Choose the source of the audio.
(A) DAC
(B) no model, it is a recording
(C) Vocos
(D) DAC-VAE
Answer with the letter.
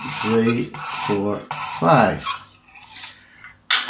B